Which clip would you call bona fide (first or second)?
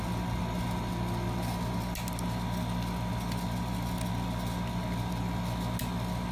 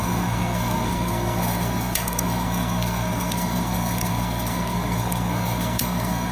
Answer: first